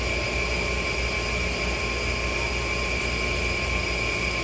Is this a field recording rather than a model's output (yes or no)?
yes